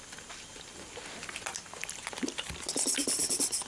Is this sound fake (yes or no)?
no